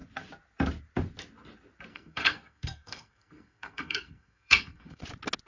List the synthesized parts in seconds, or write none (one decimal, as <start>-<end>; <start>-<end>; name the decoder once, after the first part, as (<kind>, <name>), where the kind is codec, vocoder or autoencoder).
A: 1.9-5.0 (codec, SNAC)

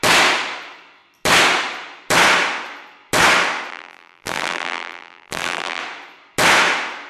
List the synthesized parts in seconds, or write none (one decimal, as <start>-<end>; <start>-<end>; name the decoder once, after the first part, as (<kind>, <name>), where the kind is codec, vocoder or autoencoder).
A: 3.7-5.8 (vocoder, BigVGAN v2)

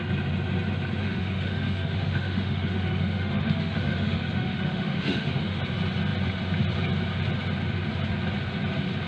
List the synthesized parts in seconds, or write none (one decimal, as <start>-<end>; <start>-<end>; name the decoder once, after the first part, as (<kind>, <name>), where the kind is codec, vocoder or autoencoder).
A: 1.0-5.6 (autoencoder, DAC-VAE)

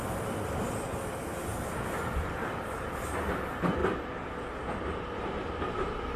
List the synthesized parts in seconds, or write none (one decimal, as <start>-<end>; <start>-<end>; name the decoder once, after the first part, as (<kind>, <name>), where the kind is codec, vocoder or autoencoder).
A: none

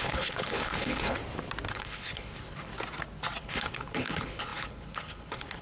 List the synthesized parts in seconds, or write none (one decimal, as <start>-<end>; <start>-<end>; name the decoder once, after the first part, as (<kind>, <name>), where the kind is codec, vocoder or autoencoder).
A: 0.0-1.2 (codec, HILCodec); 1.7-2.7; 3.4-5.6

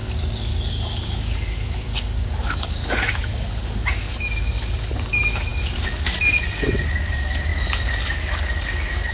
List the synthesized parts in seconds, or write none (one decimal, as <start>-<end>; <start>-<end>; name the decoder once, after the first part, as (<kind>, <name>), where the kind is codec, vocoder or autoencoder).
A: 0.0-9.1 (codec, DAC)